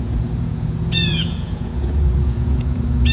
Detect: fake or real fake